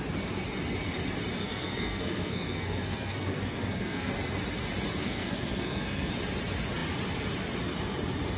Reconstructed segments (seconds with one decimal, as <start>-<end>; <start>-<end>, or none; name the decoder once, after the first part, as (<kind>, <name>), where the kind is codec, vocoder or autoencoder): 1.4-4.1 (codec, SNAC); 5.0-6.1